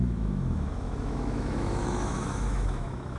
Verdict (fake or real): fake